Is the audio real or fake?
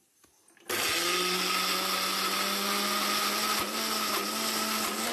real